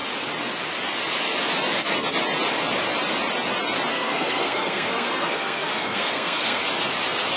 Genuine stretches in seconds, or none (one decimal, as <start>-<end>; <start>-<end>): 0.0-3.9; 6.6-7.4